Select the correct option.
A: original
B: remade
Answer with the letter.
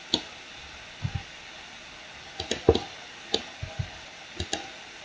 A